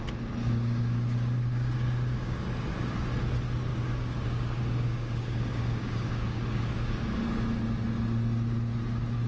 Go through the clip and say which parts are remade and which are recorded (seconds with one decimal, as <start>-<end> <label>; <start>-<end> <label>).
0.0-0.4 recorded; 0.4-2.4 remade; 2.4-3.7 recorded; 3.7-7.2 remade; 7.2-9.3 recorded